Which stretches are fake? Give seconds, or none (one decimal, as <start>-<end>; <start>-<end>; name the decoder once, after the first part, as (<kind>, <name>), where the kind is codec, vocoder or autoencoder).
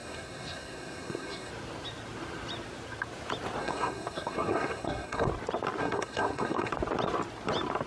0.0-1.5 (codec, SNAC); 3.6-5.3; 5.8-6.7